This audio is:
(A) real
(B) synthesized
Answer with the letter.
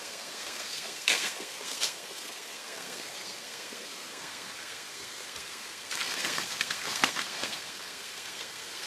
B